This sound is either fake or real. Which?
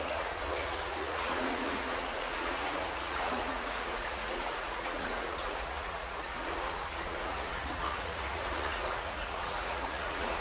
fake